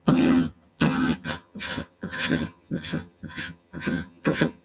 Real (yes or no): no